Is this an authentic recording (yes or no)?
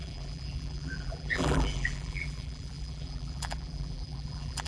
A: no